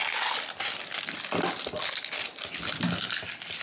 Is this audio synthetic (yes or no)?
no